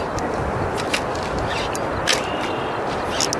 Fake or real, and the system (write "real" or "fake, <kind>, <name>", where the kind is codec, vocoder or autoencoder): real